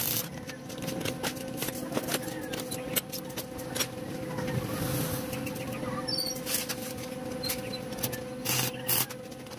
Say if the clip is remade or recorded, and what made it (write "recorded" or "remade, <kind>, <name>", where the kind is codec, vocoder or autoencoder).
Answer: recorded